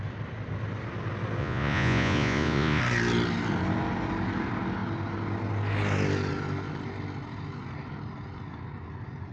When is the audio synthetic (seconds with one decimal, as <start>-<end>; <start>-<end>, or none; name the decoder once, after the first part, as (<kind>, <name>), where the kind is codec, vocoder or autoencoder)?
1.4-2.8 (vocoder, Vocos)

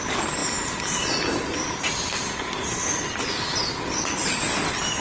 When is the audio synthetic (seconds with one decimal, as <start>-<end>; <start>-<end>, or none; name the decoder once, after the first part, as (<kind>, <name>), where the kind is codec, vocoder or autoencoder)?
none

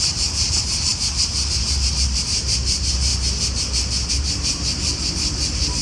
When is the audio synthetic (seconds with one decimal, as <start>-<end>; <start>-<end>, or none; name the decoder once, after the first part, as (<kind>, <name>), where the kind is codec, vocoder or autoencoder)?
0.0-3.1 (vocoder, BigVGAN v2); 4.1-5.8

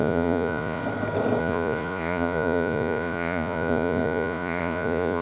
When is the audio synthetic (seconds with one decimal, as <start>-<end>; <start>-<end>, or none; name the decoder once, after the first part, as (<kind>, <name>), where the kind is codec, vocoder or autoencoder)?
0.0-0.8 (vocoder, Vocos); 1.4-5.2

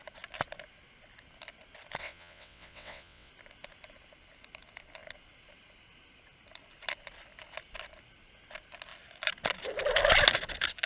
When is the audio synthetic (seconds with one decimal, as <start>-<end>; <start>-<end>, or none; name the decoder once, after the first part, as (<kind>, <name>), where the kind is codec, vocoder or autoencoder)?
2.0-3.3 (vocoder, WaveNeXt)